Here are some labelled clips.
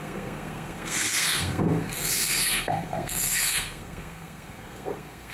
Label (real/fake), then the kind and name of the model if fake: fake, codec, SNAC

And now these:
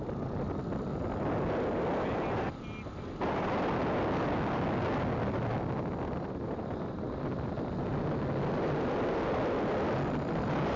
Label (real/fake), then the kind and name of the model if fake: real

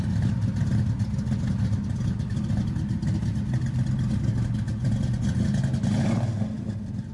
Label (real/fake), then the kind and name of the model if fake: real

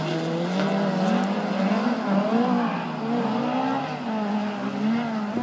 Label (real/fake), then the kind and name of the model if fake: real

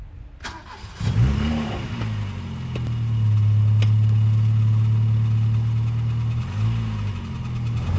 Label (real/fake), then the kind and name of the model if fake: real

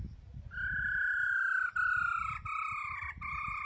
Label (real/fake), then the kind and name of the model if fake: real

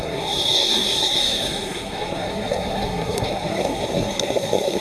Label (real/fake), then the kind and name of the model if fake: fake, codec, SNAC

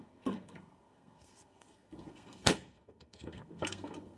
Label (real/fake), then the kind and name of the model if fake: fake, codec, SNAC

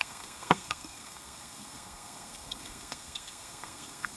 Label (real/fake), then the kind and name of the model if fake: fake, codec, SNAC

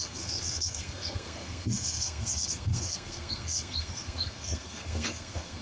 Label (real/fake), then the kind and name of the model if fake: fake, codec, SNAC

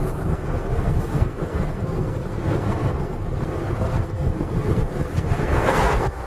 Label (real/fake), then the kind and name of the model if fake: fake, codec, SNAC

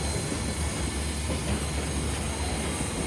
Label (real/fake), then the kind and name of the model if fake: real